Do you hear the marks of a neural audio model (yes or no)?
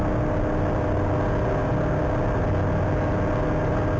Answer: no